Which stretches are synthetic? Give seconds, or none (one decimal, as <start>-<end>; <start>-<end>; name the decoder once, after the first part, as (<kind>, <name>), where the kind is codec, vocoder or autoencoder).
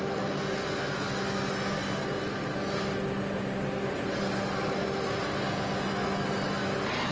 none